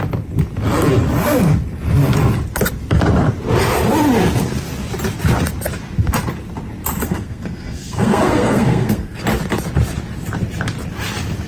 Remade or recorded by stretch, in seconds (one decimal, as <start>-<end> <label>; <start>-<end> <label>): 0.0-7.0 recorded; 7.0-9.2 remade; 9.2-11.5 recorded